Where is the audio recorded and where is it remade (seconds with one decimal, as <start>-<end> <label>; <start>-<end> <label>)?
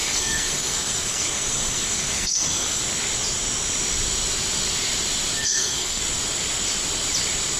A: 0.0-2.8 remade; 2.8-5.4 recorded; 5.4-6.0 remade; 6.0-7.6 recorded